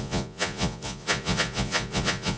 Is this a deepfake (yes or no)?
yes